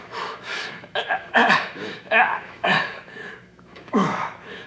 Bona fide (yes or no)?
no